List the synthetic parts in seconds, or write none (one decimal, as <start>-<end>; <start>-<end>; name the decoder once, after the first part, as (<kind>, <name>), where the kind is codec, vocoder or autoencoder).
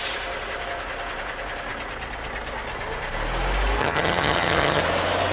3.8-4.8 (vocoder, HiFi-GAN)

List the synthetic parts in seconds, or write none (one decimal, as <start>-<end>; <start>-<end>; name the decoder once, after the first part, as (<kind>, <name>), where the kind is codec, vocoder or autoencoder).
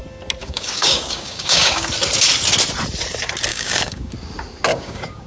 0.4-1.9 (codec, DAC); 3.5-4.1; 4.7-5.3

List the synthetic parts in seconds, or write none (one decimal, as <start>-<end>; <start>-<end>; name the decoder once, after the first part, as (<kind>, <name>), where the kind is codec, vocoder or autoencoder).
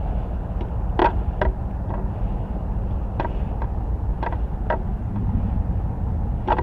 none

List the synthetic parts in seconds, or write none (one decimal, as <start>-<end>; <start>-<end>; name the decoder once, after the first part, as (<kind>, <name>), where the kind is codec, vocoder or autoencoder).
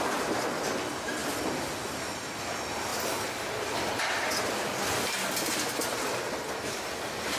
none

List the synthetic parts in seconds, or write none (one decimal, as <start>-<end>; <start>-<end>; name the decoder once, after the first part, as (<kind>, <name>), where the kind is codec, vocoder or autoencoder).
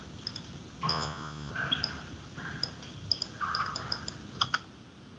0.9-1.5 (vocoder, Vocos)